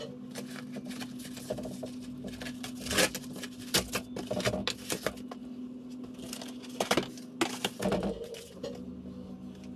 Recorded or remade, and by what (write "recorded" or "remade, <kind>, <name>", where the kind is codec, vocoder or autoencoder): recorded